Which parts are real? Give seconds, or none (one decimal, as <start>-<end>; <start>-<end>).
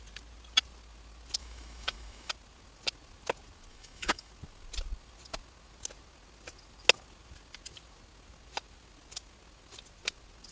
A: 0.0-1.4; 2.3-3.7; 4.3-10.5